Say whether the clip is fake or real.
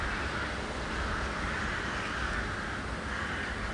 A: real